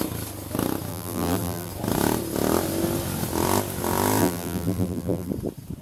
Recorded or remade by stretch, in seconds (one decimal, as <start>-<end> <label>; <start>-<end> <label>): 0.0-0.9 recorded; 0.9-1.7 remade; 1.7-4.2 recorded; 4.2-5.3 remade; 5.3-5.8 recorded